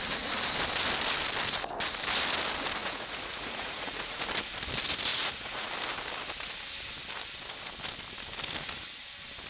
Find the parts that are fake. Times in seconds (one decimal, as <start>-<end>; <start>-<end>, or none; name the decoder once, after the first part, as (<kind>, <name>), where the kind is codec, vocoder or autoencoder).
2.8-4.2 (vocoder, Vocos); 5.1-5.7